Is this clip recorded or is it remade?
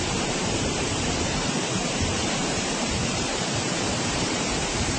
remade